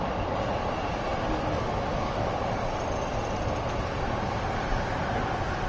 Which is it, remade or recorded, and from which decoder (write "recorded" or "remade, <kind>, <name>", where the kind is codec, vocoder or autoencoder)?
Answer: recorded